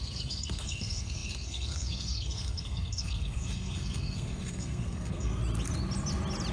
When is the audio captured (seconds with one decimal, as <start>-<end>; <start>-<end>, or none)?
5.4-6.5

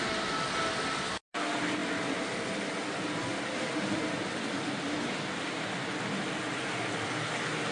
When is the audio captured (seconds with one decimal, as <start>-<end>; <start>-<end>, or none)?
0.0-7.7